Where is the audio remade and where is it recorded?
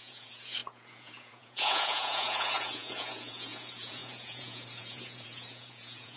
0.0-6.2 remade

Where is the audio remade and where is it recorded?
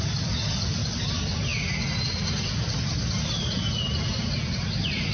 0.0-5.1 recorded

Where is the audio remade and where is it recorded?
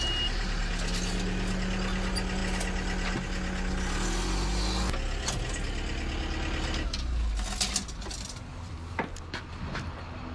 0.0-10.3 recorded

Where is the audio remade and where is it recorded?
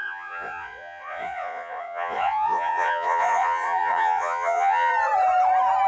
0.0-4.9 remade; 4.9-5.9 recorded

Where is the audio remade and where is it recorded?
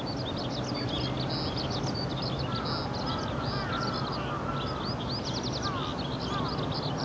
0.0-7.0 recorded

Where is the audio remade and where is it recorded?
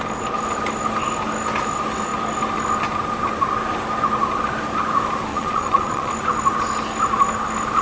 0.0-5.3 recorded; 5.3-6.1 remade; 6.1-7.8 recorded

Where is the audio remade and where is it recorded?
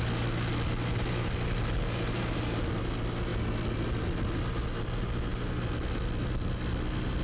0.0-7.2 recorded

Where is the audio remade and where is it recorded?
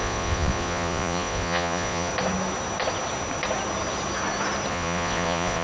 0.0-2.1 remade; 2.1-4.7 recorded; 4.7-5.6 remade